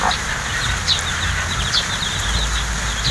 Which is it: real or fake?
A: real